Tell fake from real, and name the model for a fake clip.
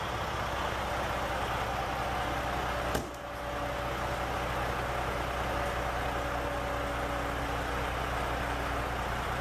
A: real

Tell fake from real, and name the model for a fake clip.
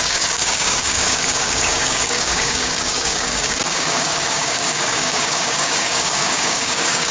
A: fake, codec, DAC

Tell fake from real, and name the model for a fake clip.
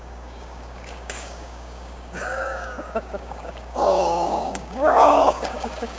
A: fake, codec, DAC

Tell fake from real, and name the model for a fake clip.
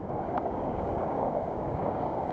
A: fake, codec, DAC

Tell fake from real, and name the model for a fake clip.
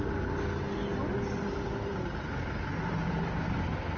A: real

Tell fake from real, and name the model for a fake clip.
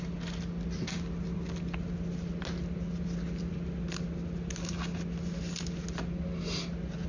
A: real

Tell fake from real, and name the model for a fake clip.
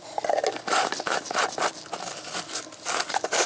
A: real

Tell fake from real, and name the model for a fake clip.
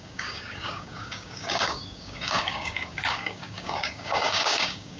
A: fake, codec, DAC